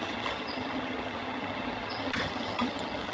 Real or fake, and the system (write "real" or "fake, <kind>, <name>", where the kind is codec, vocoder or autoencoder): fake, vocoder, HiFi-GAN